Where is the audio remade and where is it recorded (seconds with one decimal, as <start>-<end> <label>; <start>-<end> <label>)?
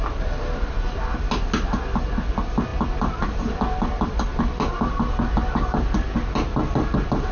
0.0-7.3 recorded